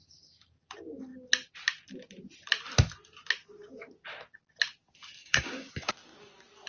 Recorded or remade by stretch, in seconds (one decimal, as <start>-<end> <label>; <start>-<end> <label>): 0.0-5.2 recorded; 5.2-5.9 remade; 5.9-6.7 recorded